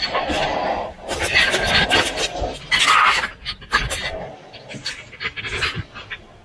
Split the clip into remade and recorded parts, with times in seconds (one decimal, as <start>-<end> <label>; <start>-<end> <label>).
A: 0.0-6.4 recorded